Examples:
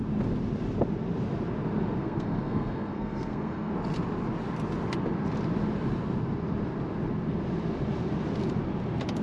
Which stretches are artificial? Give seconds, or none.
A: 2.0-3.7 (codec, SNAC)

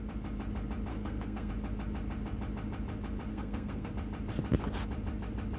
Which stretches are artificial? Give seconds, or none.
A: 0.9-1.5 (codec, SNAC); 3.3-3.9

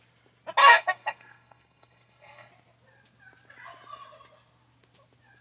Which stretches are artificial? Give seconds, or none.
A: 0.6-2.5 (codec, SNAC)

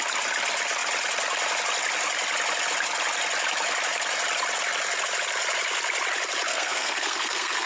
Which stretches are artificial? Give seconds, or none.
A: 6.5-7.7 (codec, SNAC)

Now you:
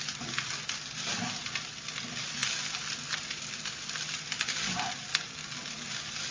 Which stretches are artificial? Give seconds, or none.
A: none

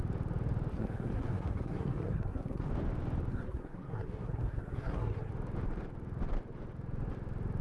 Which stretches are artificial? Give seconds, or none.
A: 0.7-2.7 (codec, SNAC); 3.3-5.3

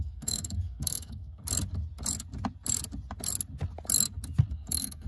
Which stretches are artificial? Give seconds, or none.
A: 0.0-1.4 (codec, SNAC); 4.5-5.1

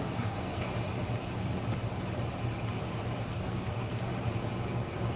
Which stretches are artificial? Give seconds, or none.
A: 0.0-0.7 (codec, SNAC); 3.2-4.1; 4.7-5.2